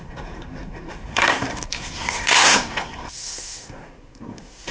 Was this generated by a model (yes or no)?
yes